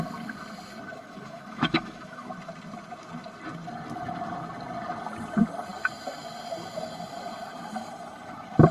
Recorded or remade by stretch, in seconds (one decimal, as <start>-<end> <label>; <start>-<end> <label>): 0.0-1.0 recorded; 1.0-2.3 remade; 2.3-8.7 recorded